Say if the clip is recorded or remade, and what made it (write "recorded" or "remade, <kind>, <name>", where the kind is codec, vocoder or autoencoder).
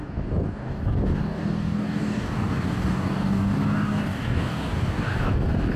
remade, codec, DAC